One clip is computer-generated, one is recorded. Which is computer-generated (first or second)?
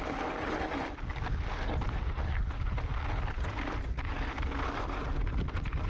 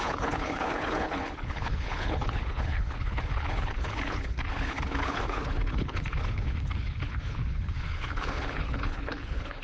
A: second